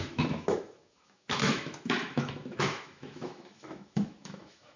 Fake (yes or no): yes